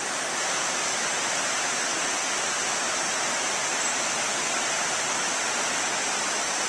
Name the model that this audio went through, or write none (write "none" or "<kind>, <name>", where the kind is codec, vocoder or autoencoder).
none